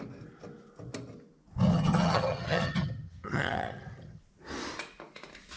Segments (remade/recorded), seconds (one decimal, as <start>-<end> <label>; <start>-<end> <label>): 0.0-1.7 recorded; 1.7-4.2 remade; 4.2-5.6 recorded